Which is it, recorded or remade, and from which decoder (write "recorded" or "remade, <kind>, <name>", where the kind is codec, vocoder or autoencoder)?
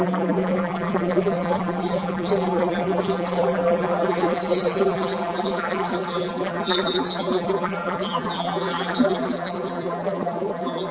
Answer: remade, vocoder, BigVGAN v2